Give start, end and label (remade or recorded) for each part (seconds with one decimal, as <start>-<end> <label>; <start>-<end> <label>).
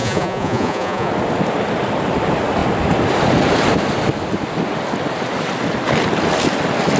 0.0-1.1 remade; 1.1-7.0 recorded